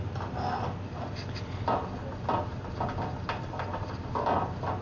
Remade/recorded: recorded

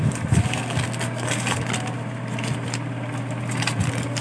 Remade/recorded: recorded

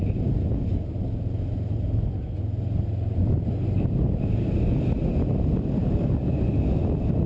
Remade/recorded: recorded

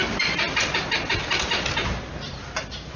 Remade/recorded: recorded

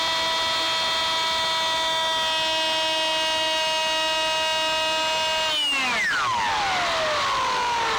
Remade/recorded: recorded